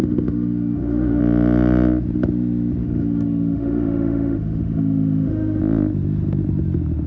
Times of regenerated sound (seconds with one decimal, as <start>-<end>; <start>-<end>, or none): 0.0-1.2; 2.8-5.6